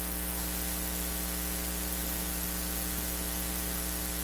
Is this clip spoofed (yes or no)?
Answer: no